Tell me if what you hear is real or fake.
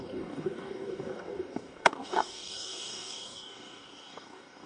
fake